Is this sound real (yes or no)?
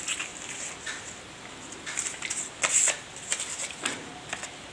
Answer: yes